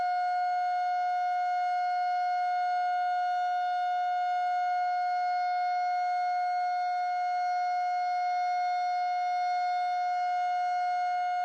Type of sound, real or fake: real